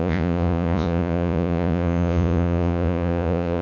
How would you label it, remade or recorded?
remade